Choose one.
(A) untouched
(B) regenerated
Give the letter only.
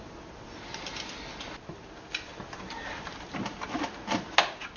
A